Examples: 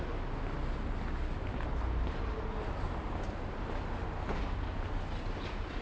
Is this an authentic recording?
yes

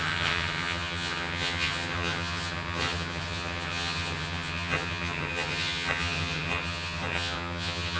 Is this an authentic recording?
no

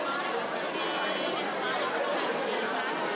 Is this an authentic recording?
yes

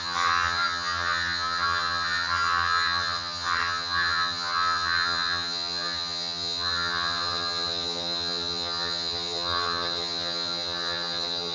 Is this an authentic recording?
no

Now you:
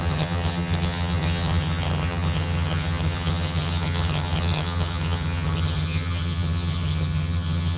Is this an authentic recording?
no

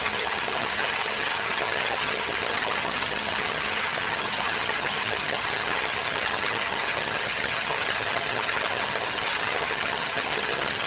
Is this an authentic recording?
no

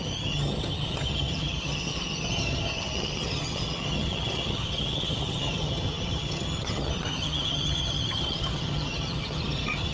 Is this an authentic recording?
no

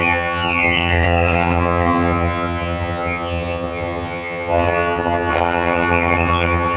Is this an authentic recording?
no